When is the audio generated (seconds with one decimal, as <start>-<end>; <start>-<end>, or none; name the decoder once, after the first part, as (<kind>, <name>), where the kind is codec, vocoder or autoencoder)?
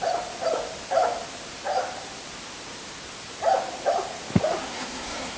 4.6-5.4 (codec, SNAC)